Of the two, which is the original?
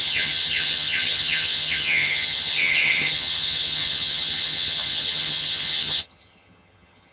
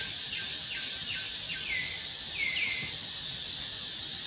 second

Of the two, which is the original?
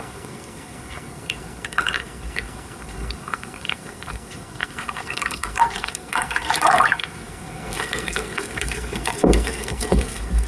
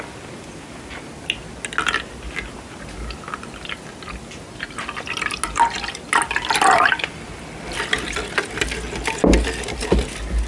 second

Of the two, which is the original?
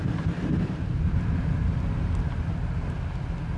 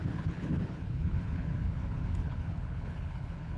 first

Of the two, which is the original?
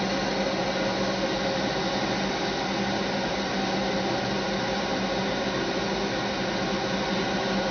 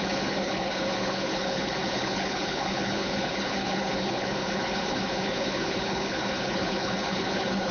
first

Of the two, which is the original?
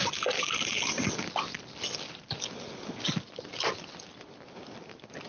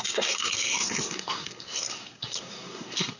first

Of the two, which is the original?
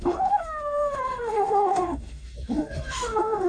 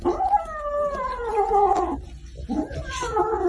second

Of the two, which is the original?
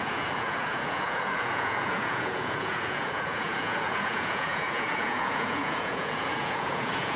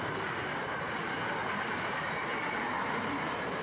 second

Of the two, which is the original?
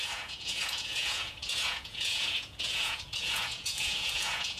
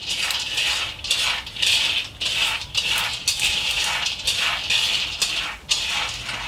second